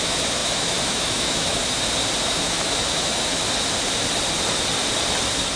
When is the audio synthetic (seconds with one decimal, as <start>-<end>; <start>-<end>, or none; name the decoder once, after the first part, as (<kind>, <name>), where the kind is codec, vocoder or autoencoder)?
0.0-1.6 (autoencoder, DAC-VAE); 2.2-3.4